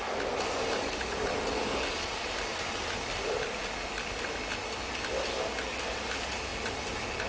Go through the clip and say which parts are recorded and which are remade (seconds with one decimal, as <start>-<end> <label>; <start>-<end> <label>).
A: 0.0-7.3 recorded